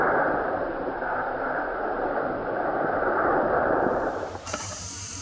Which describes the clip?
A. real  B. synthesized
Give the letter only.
B